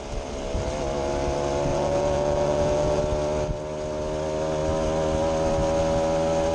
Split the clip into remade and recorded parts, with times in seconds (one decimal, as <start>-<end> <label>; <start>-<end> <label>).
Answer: 0.0-1.7 recorded; 1.7-3.0 remade; 3.0-6.5 recorded